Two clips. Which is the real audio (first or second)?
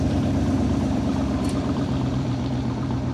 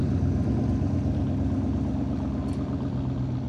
second